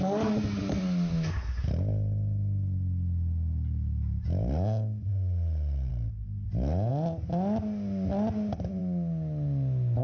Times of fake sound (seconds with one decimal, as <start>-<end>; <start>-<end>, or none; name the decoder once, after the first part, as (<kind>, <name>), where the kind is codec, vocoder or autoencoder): none